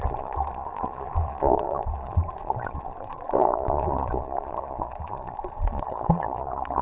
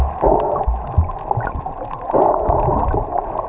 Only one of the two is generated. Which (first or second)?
first